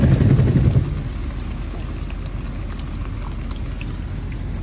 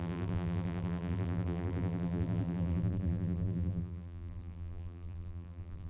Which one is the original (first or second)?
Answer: first